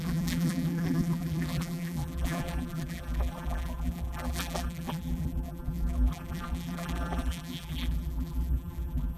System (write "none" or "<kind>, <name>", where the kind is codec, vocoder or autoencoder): vocoder, BigVGAN v2